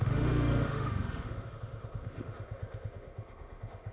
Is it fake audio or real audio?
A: fake